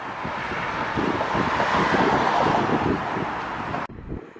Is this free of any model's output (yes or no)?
yes